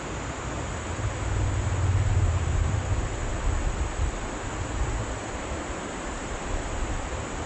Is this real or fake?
real